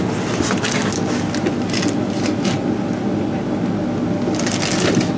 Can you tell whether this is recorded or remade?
recorded